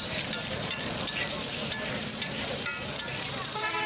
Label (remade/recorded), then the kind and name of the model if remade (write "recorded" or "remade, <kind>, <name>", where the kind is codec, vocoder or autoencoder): remade, vocoder, BigVGAN v2